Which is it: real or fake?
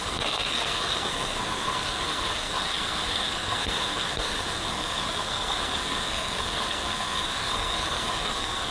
fake